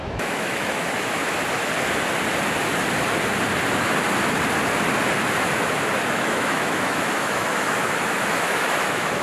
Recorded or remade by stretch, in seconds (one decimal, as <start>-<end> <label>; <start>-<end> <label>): 0.0-1.2 remade; 1.2-6.1 recorded; 6.1-9.2 remade